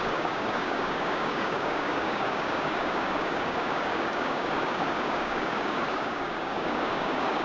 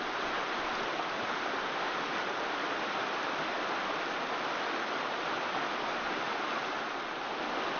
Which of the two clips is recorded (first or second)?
second